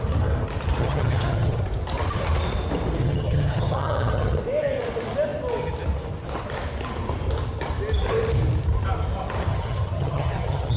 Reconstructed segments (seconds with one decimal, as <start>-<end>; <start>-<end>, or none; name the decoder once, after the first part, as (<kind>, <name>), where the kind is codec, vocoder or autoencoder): 0.8-1.6 (vocoder, HiFi-GAN); 3.0-4.4; 9.5-10.8